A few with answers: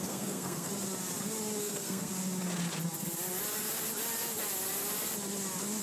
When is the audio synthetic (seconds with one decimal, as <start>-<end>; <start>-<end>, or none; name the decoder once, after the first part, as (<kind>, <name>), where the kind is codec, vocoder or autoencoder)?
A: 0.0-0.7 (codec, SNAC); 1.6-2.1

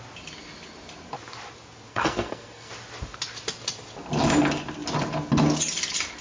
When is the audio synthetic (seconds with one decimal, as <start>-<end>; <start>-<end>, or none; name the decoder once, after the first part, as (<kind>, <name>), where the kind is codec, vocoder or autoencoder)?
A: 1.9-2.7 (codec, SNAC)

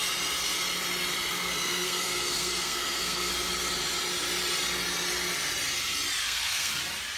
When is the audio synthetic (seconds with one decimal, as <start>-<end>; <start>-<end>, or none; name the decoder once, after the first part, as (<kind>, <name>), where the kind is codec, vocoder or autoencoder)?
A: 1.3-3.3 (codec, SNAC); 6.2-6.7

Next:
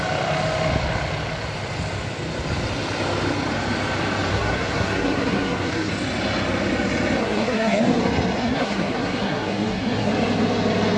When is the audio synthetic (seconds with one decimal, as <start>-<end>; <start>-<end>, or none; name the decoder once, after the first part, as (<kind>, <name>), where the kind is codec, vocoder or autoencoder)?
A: 4.3-5.9 (codec, SNAC); 7.2-8.0; 8.4-10.1

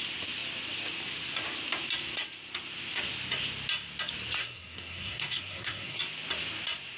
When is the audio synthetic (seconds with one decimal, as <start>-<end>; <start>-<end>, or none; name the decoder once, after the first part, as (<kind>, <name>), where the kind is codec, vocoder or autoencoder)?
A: 4.4-6.0 (codec, SNAC)

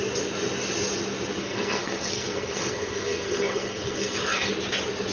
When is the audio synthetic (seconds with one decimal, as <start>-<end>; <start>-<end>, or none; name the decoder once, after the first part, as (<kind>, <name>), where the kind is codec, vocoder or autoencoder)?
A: 1.4-4.5 (codec, SNAC)